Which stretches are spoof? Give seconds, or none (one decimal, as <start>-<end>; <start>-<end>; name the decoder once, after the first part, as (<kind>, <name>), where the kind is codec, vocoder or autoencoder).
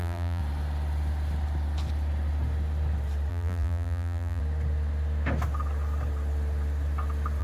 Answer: 0.0-0.4 (vocoder, BigVGAN v2); 3.3-4.4